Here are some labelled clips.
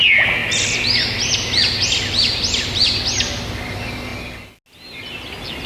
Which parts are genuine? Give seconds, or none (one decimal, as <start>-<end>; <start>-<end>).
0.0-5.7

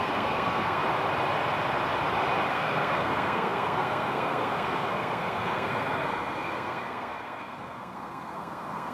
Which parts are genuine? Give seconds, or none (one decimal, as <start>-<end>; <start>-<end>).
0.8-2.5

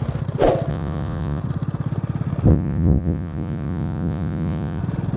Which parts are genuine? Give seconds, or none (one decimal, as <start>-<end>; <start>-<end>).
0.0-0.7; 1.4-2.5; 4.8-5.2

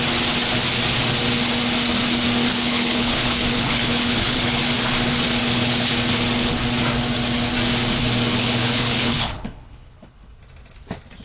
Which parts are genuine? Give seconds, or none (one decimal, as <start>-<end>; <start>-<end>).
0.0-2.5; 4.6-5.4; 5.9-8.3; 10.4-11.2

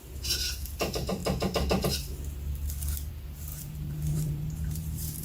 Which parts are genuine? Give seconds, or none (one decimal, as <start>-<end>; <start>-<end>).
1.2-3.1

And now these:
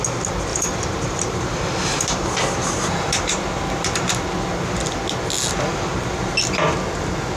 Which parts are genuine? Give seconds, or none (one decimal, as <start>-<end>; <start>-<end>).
0.0-0.5; 4.1-5.7; 6.4-7.4